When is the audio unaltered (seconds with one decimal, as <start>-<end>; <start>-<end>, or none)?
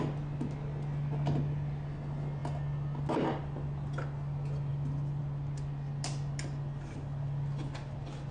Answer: 0.0-8.3